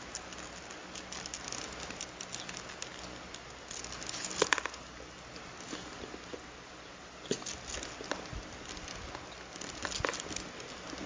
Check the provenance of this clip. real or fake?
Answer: real